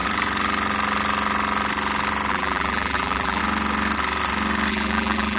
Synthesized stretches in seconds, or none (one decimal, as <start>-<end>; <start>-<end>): 2.3-3.4; 4.7-5.4